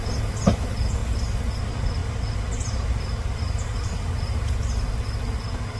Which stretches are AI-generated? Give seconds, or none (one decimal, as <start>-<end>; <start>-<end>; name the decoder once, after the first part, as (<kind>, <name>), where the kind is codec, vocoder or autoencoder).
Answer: 2.0-4.9 (vocoder, BigVGAN v2)

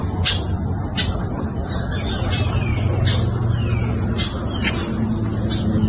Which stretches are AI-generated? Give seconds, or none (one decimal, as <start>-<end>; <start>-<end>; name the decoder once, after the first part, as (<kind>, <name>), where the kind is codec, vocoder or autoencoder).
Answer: none